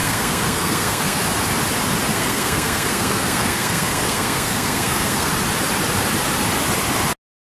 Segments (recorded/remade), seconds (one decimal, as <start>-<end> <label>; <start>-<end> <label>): 0.0-1.2 remade; 1.2-2.1 recorded; 2.1-5.3 remade; 5.3-7.4 recorded